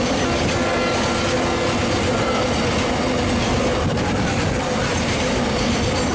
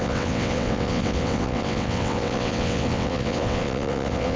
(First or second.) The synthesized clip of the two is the second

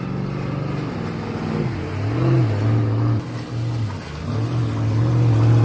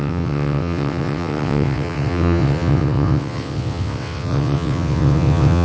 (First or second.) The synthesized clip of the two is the second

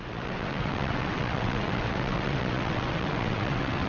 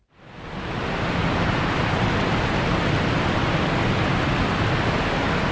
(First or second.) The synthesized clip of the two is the first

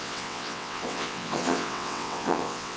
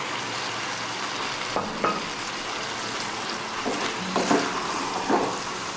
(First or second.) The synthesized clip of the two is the first